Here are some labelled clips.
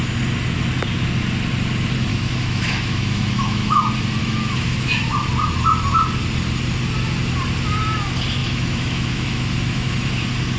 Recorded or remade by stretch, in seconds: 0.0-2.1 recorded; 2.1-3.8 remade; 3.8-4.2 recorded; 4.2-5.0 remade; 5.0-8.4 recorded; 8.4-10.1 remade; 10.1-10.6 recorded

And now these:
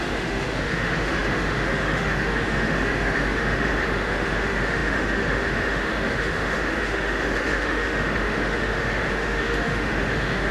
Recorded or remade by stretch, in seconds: 0.0-10.5 remade

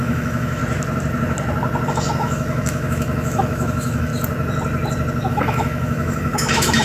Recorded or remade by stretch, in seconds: 0.0-0.6 remade; 0.6-1.9 recorded; 1.9-4.1 remade; 4.1-5.3 recorded; 5.3-6.8 remade